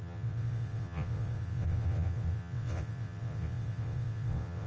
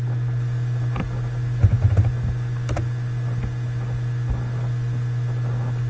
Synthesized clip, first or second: first